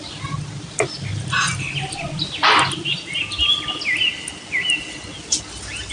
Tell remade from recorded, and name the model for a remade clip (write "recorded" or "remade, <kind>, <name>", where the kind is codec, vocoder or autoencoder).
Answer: recorded